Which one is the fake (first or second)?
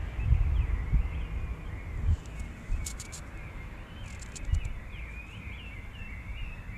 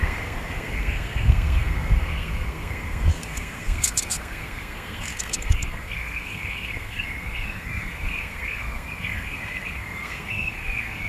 second